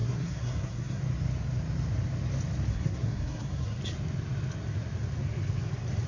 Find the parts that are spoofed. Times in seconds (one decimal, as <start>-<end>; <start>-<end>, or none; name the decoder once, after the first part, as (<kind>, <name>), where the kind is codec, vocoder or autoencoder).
0.0-1.0 (codec, SNAC); 2.7-3.8